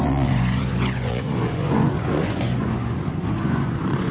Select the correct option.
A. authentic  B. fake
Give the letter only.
B